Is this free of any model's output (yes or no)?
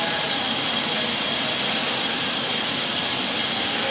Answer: yes